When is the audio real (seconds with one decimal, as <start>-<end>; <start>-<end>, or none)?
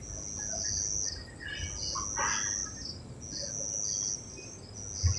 0.0-5.2